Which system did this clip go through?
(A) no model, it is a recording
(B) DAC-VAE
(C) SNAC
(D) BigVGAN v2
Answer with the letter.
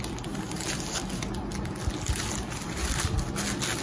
A